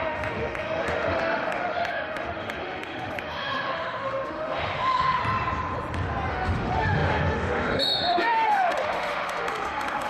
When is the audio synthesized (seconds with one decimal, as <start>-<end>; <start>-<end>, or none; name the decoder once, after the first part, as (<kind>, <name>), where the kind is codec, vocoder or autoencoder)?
0.0-5.2 (autoencoder, DAC-VAE); 6.3-10.1